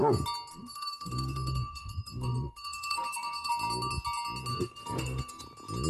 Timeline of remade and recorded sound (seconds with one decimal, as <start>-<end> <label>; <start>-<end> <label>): 0.0-0.5 recorded; 0.5-3.5 remade; 3.5-4.5 recorded; 4.5-5.4 remade; 5.4-5.9 recorded